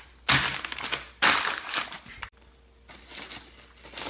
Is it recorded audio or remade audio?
recorded